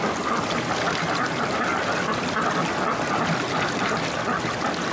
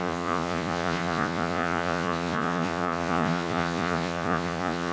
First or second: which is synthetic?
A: second